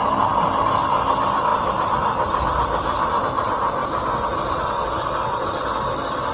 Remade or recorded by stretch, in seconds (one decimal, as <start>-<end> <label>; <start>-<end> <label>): 0.0-1.5 recorded; 1.5-3.2 remade; 3.2-6.3 recorded